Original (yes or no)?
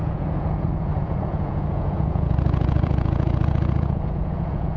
no